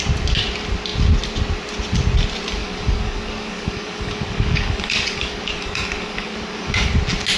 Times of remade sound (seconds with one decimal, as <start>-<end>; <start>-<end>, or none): 2.6-6.9